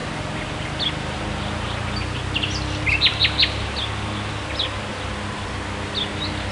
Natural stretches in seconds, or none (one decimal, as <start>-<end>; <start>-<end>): 0.0-6.5